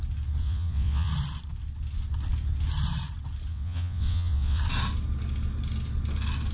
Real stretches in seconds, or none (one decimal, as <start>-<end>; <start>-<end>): 0.0-0.4; 1.1-3.5; 4.6-6.5